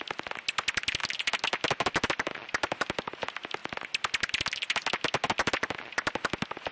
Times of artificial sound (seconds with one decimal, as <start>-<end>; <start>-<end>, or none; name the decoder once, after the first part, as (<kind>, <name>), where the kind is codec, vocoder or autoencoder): none